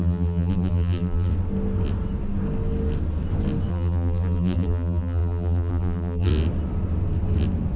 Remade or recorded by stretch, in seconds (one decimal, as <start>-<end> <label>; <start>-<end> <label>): 0.0-1.3 remade; 1.3-3.7 recorded; 3.7-6.3 remade; 6.3-7.8 recorded